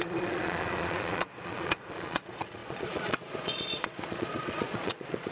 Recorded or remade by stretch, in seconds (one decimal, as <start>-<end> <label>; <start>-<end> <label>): 0.0-5.3 remade